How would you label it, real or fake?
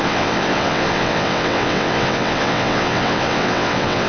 fake